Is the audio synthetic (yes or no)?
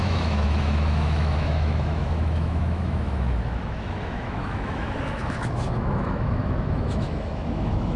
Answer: yes